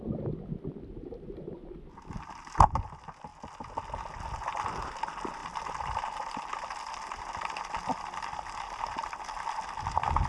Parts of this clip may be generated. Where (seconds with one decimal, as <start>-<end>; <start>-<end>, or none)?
0.0-1.6; 2.2-3.3; 4.8-10.3